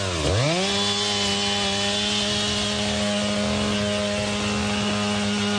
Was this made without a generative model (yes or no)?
yes